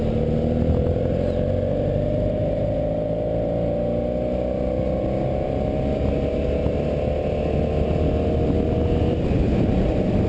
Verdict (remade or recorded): recorded